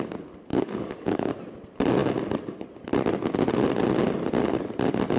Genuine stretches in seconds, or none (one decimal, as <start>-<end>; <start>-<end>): 0.0-0.5; 1.3-5.2